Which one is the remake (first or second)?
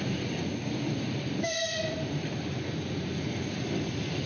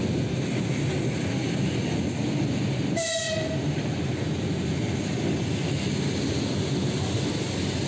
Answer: first